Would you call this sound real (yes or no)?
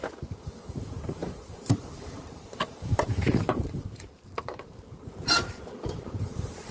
no